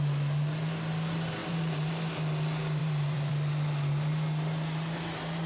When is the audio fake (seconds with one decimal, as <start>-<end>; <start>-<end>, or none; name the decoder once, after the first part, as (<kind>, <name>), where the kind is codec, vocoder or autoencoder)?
1.4-1.9 (vocoder, BigVGAN v2); 2.8-3.3